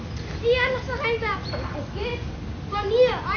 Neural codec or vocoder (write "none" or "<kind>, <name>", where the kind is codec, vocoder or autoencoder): none